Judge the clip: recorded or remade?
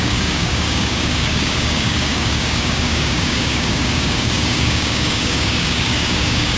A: remade